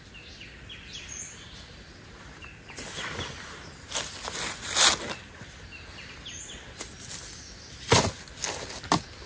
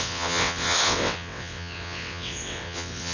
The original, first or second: first